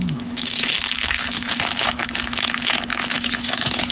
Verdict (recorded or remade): remade